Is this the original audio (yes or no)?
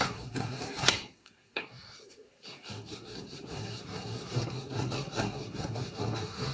no